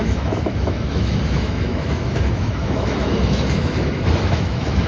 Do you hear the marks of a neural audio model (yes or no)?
yes